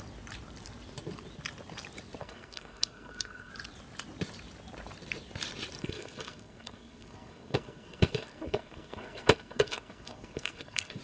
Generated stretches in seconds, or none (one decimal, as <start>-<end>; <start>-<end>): 2.2-3.5; 5.8-11.0

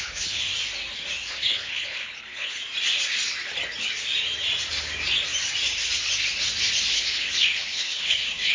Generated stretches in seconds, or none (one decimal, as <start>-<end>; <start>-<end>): 0.0-0.5; 1.3-2.6; 6.9-8.5

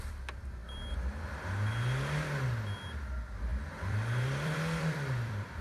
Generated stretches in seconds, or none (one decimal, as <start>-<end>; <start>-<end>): 3.5-5.6

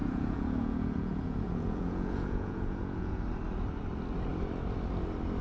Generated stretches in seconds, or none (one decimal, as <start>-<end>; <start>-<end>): 0.0-3.2